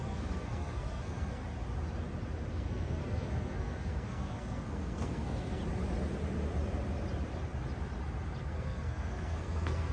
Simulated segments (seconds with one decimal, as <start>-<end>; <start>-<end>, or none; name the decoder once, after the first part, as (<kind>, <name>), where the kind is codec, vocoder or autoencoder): 0.0-1.4 (codec, SNAC); 2.5-5.6; 8.4-9.9